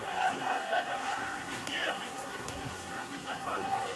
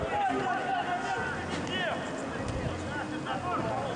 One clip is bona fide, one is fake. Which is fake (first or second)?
first